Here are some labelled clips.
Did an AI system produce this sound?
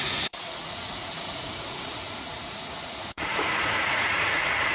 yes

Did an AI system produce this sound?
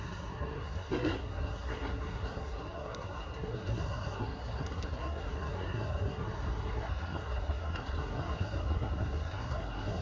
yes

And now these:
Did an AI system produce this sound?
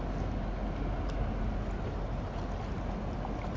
no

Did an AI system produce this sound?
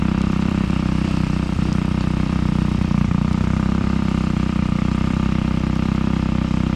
yes